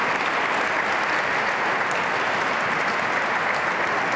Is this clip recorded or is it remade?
recorded